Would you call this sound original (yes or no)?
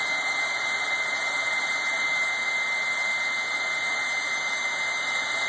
yes